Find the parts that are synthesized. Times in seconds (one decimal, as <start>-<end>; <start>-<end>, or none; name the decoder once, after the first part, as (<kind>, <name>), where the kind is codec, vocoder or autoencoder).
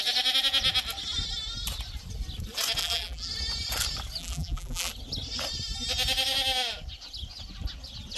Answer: 2.8-3.3 (vocoder, BigVGAN v2); 4.2-4.9